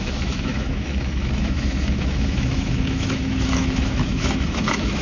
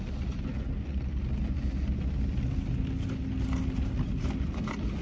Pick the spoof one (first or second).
first